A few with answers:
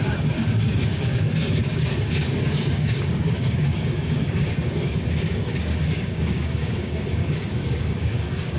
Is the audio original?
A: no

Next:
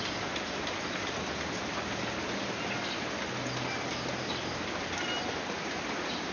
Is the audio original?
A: yes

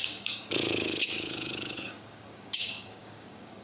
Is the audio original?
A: no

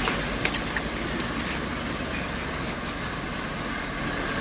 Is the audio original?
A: yes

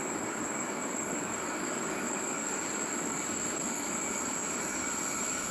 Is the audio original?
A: no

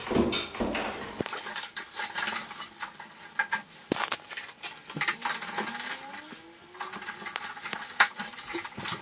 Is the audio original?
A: yes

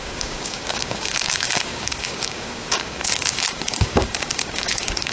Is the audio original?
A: no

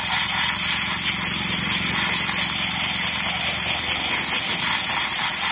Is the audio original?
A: yes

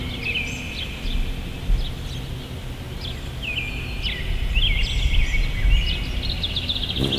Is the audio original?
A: yes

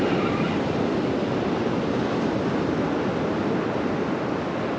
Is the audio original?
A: yes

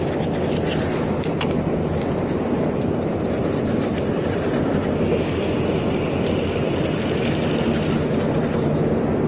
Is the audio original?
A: yes